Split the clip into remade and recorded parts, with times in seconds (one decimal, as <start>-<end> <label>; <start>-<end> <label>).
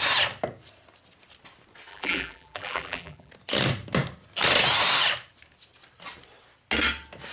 0.0-1.9 recorded; 1.9-3.3 remade; 3.3-7.3 recorded